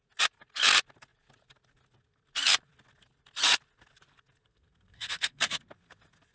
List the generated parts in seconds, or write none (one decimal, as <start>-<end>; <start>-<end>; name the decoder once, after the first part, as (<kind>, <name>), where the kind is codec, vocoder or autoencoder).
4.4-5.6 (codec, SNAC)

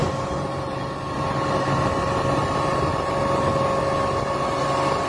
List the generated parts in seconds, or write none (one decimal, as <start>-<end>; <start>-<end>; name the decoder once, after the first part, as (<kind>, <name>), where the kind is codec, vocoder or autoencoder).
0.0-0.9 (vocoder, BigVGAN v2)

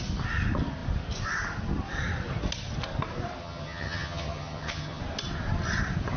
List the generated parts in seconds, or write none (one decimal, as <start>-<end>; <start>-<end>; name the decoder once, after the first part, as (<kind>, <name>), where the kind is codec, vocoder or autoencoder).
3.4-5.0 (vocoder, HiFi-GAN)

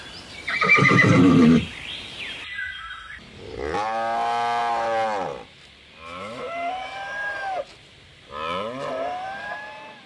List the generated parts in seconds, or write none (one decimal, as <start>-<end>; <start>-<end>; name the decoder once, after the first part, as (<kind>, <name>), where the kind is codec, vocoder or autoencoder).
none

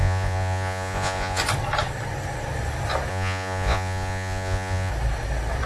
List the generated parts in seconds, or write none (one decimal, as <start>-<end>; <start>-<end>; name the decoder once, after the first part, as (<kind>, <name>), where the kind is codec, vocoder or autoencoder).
0.0-1.4 (vocoder, Vocos); 3.1-4.9

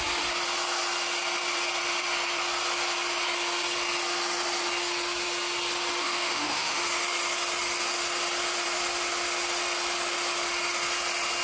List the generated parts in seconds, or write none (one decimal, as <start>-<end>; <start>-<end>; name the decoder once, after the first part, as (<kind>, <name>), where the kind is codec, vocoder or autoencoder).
6.0-6.8 (autoencoder, DAC-VAE)

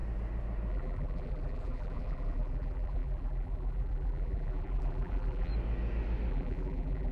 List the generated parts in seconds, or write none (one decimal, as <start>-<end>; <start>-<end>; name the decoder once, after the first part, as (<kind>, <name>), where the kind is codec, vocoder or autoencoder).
0.7-5.5 (vocoder, BigVGAN v2); 6.3-7.1